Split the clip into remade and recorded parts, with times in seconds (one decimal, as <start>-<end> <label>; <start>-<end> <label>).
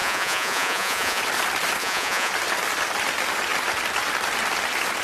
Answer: 0.0-1.2 remade; 1.2-1.8 recorded; 1.8-2.3 remade; 2.3-5.0 recorded